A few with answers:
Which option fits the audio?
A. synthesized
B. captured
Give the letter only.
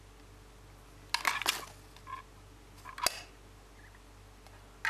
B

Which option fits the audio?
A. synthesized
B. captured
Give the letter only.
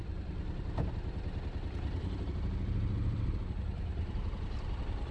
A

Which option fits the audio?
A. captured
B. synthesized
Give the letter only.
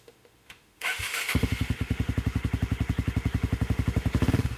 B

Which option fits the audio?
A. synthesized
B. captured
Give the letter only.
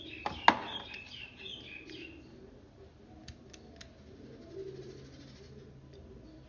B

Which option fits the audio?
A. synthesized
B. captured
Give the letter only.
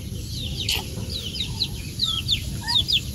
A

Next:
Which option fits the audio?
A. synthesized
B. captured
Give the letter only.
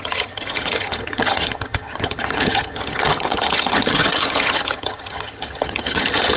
A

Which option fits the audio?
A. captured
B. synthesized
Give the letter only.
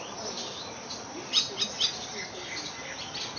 A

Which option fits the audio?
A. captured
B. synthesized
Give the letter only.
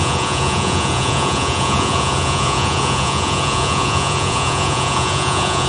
B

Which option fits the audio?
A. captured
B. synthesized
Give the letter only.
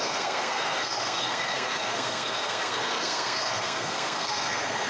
B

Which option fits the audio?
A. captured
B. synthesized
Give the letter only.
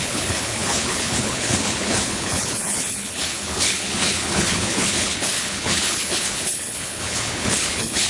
B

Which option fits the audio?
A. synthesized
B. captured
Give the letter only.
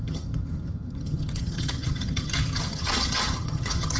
A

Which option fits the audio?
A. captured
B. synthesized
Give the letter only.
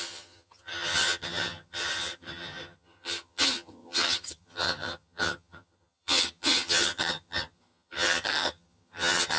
B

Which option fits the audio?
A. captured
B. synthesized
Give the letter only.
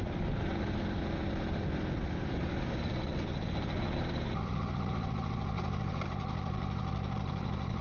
A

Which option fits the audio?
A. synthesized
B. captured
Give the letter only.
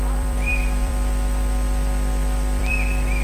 A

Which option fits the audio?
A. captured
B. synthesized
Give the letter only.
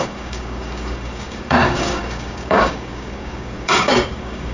B